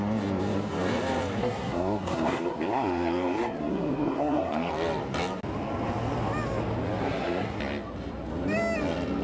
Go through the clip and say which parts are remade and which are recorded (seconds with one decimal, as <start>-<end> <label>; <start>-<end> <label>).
0.0-1.4 recorded; 1.4-4.7 remade; 4.7-7.0 recorded; 7.0-7.6 remade; 7.6-9.2 recorded